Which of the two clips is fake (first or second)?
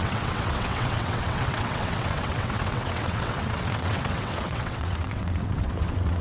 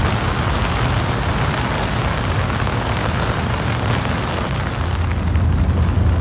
first